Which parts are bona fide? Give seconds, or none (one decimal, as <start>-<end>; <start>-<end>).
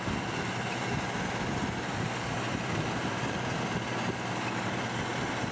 0.0-5.5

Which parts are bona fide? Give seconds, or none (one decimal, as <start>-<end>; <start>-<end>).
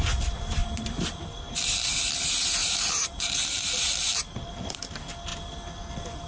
0.0-0.6; 1.6-2.6; 3.9-6.3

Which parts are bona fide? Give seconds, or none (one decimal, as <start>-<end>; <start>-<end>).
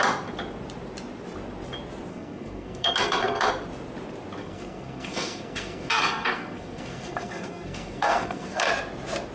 0.0-2.1; 3.5-4.4; 8.7-9.3